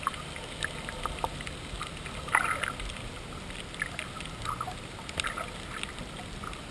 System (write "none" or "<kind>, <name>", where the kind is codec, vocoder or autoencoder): none